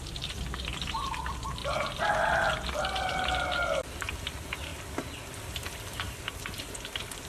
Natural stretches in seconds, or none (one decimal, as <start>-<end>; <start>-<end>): 1.6-2.5; 4.7-5.2